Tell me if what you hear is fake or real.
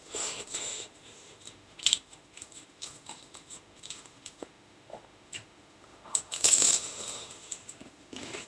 fake